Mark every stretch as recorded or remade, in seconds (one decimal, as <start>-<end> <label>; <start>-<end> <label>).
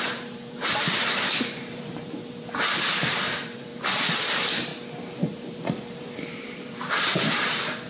0.0-3.7 remade; 3.7-4.2 recorded; 4.2-4.7 remade; 4.7-5.2 recorded; 5.2-7.9 remade